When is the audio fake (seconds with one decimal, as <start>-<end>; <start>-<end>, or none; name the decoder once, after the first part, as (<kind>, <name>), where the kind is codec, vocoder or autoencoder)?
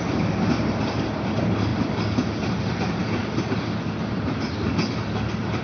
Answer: 0.0-1.7 (vocoder, BigVGAN v2); 2.4-3.0